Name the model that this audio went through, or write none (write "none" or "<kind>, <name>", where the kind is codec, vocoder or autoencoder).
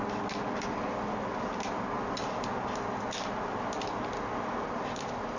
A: none